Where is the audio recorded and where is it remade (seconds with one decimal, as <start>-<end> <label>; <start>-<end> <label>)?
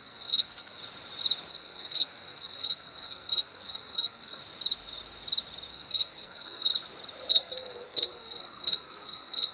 0.0-0.8 remade; 0.8-1.5 recorded; 1.5-4.4 remade; 4.4-5.7 recorded; 5.7-6.7 remade; 6.7-7.3 recorded; 7.3-9.5 remade